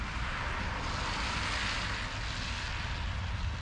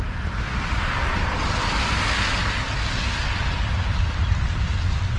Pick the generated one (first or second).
second